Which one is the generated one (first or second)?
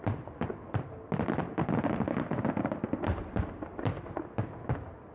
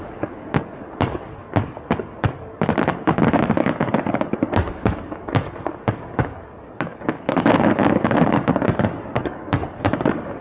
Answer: second